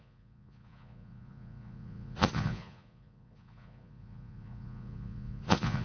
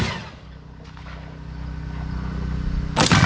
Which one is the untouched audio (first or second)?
second